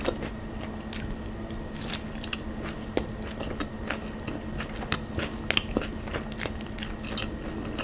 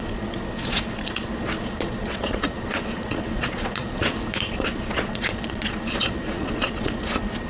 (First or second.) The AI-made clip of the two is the second